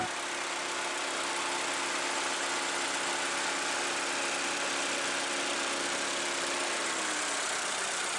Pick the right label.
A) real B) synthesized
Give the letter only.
A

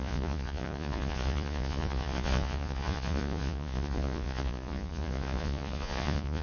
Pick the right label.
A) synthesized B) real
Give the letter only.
A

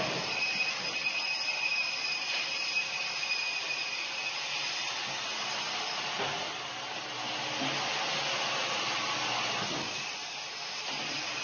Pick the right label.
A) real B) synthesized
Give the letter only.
A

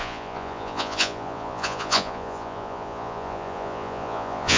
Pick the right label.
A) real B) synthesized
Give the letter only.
B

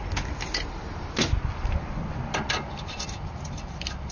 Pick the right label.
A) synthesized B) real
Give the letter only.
B